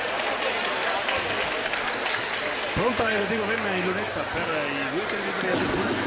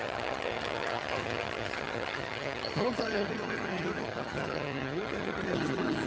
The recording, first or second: first